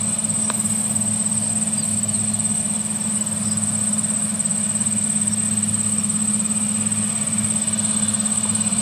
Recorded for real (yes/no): yes